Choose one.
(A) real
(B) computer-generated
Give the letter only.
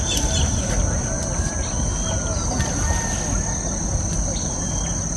A